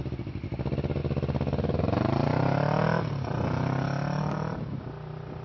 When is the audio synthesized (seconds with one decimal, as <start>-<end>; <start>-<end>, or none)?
none